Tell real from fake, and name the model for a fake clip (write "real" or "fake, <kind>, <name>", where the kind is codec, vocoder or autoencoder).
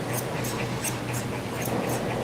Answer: real